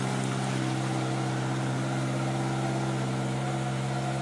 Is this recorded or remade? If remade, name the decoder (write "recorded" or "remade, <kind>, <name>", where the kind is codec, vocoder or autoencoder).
recorded